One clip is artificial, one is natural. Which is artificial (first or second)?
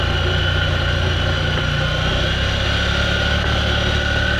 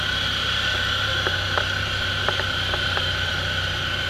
second